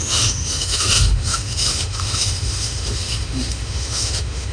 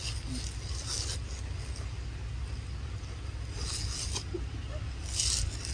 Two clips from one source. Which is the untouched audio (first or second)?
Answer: second